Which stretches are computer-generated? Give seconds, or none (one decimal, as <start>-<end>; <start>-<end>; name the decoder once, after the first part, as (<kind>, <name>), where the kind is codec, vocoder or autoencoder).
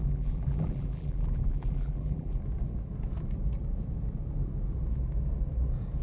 0.0-2.4 (vocoder, BigVGAN v2)